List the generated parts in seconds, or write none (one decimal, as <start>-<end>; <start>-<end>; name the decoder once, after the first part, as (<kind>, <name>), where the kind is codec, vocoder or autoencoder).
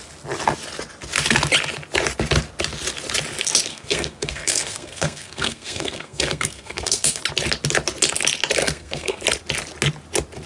3.7-7.2 (codec, SNAC); 8.6-9.2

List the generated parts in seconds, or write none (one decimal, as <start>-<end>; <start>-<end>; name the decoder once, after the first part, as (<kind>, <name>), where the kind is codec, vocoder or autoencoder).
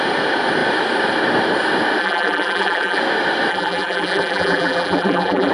2.0-3.0 (vocoder, BigVGAN v2); 3.5-5.5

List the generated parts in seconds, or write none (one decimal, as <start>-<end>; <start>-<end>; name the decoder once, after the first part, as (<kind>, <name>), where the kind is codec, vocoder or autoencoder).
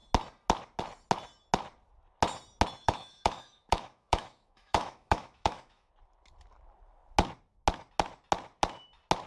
2.8-5.9 (autoencoder, DAC-VAE)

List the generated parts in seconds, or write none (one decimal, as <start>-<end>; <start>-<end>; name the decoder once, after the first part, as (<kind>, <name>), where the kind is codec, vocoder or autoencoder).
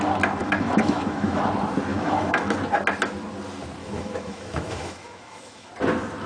0.4-1.4 (autoencoder, DAC-VAE); 1.9-2.5; 3.8-5.7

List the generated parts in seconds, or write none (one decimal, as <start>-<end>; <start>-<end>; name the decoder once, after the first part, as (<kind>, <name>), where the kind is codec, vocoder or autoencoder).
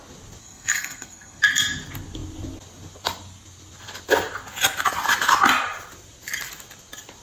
0.4-1.4 (codec, SNAC)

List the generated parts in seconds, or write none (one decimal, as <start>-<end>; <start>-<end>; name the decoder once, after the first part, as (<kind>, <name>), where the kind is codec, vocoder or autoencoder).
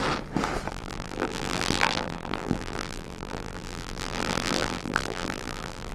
0.7-5.9 (vocoder, BigVGAN v2)